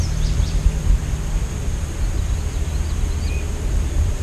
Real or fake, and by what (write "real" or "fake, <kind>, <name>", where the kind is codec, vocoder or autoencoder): real